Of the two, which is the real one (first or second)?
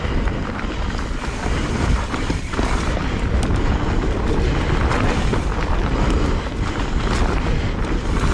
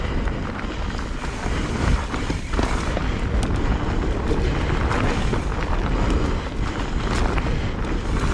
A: second